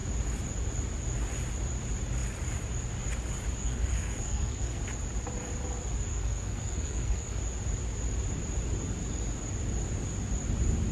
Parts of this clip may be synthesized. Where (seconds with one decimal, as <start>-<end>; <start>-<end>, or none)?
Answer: 3.6-4.8; 6.1-7.4